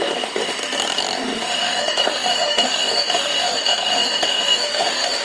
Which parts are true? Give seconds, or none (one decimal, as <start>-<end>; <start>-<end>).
0.6-1.2